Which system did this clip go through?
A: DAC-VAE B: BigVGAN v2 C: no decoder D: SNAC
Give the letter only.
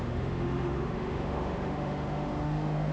A